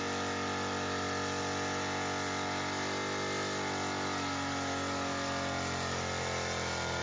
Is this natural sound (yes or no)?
yes